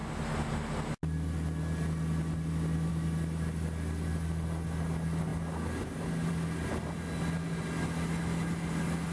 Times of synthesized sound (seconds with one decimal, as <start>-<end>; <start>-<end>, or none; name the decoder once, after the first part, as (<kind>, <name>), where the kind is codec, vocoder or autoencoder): none